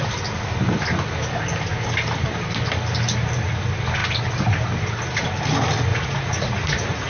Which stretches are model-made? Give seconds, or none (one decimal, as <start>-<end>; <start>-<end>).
5.9-7.1